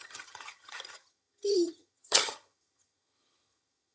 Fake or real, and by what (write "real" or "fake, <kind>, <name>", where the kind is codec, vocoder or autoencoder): fake, vocoder, HiFi-GAN